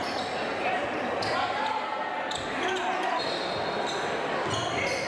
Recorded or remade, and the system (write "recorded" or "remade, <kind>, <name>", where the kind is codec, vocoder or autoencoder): recorded